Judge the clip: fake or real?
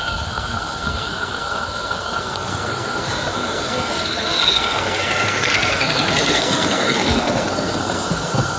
fake